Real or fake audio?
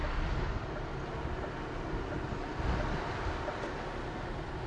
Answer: fake